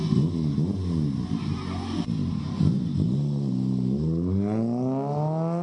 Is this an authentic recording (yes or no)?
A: yes